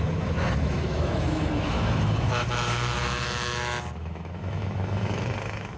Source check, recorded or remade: remade